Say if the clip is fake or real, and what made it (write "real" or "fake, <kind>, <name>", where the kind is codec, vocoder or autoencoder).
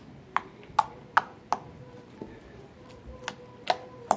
real